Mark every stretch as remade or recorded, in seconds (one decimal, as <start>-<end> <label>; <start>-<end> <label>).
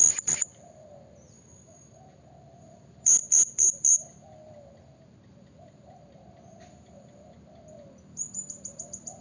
0.0-9.2 recorded